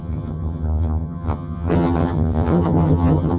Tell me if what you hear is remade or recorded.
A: remade